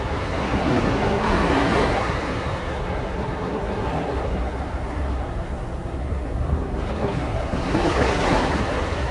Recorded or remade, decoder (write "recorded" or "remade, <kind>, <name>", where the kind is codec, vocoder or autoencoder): remade, codec, SNAC